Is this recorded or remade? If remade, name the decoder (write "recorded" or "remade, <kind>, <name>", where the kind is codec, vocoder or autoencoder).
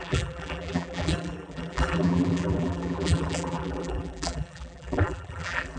remade, vocoder, BigVGAN v2